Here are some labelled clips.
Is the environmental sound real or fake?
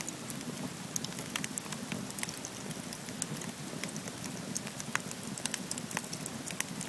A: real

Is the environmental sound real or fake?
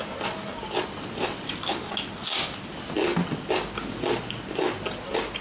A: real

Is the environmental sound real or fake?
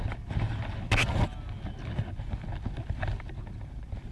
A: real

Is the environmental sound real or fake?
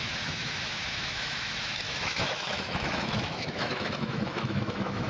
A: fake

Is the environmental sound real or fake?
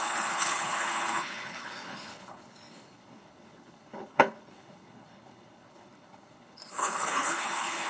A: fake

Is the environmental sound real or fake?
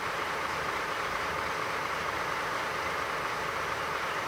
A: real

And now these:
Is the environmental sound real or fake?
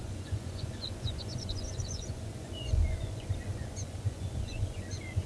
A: fake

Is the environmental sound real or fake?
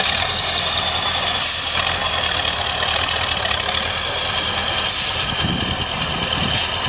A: real